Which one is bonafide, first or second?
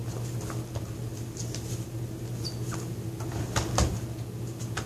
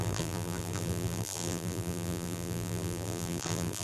first